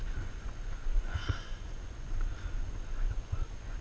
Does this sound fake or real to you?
fake